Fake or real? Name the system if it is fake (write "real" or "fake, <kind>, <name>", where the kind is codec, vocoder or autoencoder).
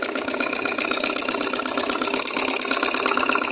real